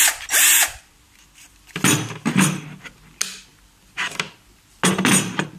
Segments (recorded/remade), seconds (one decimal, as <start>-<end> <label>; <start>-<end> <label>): 0.0-5.6 recorded